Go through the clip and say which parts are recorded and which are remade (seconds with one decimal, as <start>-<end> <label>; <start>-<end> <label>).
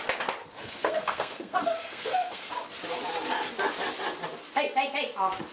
0.0-0.4 recorded; 0.4-2.5 remade; 2.5-5.5 recorded